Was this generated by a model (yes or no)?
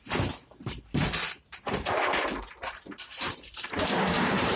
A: yes